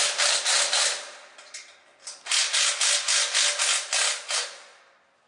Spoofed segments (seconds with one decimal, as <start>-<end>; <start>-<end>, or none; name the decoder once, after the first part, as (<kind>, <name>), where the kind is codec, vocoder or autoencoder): none